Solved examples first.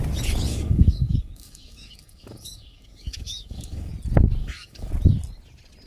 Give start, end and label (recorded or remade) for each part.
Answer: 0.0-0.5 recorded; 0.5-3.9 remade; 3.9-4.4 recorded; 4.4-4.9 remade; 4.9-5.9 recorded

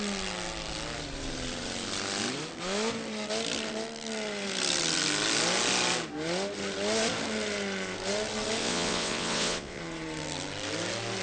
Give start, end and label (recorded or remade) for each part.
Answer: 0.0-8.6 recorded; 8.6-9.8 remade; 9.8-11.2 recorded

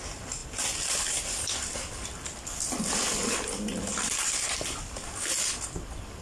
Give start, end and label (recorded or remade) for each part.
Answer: 0.0-6.2 recorded